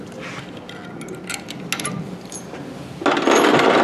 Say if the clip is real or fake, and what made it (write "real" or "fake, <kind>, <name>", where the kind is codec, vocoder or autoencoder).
real